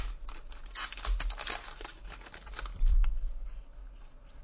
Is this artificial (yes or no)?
no